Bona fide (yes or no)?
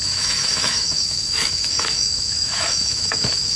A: no